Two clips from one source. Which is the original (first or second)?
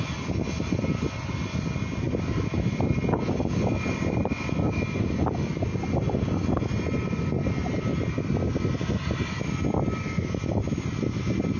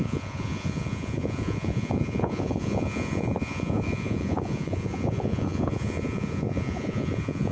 first